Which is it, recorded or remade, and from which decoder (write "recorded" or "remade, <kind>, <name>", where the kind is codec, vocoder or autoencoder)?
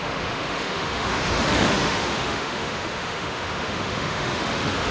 remade, autoencoder, DAC-VAE